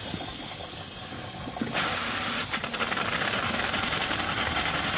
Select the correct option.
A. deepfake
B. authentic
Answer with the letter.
B